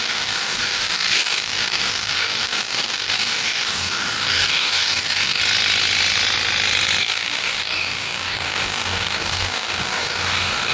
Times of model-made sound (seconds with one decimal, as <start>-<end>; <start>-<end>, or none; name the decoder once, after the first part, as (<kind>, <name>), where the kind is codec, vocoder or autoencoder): 0.0-5.4 (codec, DAC); 7.0-10.7